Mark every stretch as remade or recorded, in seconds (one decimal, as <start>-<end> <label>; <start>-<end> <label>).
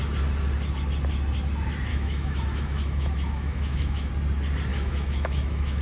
0.0-1.9 recorded; 1.9-4.1 remade; 4.1-4.7 recorded; 4.7-5.8 remade